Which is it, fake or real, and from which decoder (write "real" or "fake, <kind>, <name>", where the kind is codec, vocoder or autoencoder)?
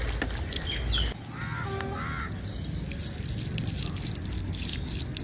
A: real